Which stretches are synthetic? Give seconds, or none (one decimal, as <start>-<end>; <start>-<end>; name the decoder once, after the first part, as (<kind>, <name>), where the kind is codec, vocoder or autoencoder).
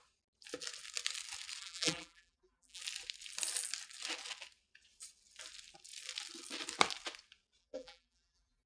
1.6-2.8 (vocoder, BigVGAN v2); 7.6-8.7